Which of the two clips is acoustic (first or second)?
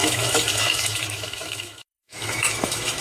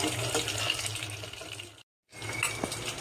second